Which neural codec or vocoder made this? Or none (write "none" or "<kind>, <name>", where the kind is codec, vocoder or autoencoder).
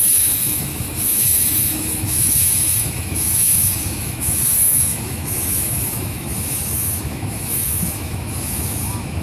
autoencoder, DAC-VAE